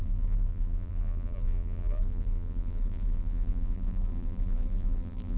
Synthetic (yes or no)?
yes